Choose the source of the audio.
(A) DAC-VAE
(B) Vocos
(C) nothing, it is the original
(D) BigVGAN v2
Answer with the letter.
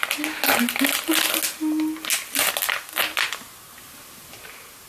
C